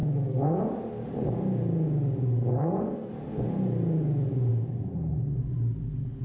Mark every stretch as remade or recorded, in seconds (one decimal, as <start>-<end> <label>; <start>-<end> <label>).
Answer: 0.0-0.6 remade; 0.6-2.5 recorded; 2.5-3.1 remade; 3.1-6.2 recorded

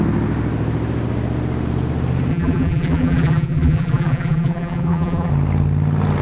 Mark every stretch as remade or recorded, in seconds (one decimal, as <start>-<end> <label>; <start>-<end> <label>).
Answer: 0.0-2.3 recorded; 2.3-5.3 remade; 5.3-6.2 recorded

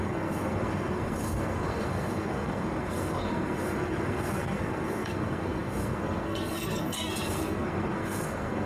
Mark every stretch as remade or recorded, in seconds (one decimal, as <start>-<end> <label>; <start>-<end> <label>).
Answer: 0.0-8.7 remade

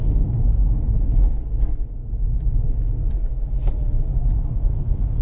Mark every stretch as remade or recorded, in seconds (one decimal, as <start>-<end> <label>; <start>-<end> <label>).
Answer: 0.0-1.4 remade; 1.4-4.5 recorded; 4.5-5.2 remade

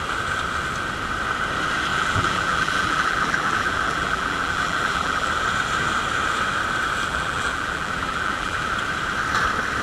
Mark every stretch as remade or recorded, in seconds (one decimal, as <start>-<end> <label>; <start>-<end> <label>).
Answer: 0.0-1.9 recorded; 1.9-5.3 remade; 5.3-7.1 recorded; 7.1-8.7 remade; 8.7-9.8 recorded

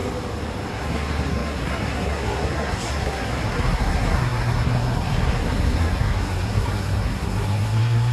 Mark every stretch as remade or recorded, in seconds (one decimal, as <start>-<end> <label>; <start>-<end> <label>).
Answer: 0.0-0.7 recorded; 0.7-8.1 remade

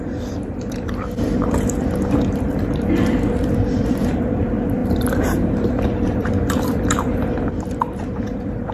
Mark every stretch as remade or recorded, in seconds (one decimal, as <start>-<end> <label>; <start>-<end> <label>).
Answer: 0.0-8.7 remade

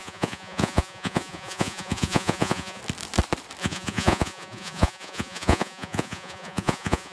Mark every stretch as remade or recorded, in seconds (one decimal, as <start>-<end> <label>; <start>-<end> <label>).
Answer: 0.0-2.8 remade; 2.8-3.6 recorded; 3.6-7.1 remade